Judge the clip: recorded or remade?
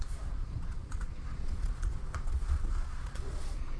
remade